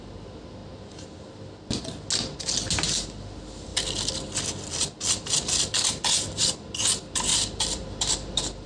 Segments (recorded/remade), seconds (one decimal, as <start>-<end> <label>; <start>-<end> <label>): 0.0-7.3 recorded; 7.3-8.7 remade